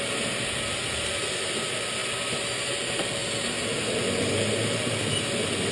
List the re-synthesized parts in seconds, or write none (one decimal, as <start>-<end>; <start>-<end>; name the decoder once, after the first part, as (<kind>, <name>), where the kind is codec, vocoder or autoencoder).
none